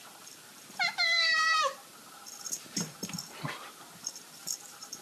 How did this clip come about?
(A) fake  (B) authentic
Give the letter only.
A